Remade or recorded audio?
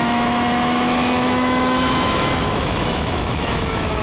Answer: remade